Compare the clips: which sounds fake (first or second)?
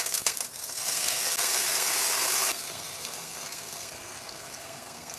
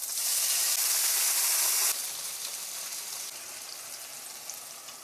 first